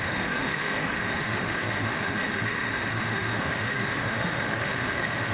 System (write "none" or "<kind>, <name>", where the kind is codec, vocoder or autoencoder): autoencoder, DAC-VAE